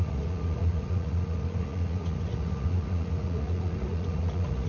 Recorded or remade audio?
remade